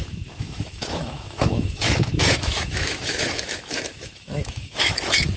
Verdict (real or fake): fake